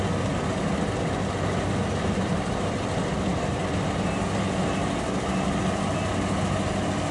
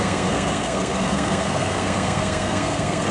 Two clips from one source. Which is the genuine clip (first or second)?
first